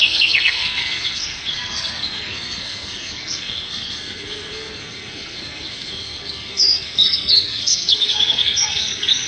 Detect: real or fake fake